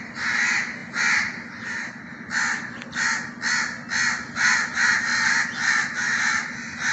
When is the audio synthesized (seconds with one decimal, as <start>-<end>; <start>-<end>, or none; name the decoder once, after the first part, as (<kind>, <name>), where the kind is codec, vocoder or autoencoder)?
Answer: none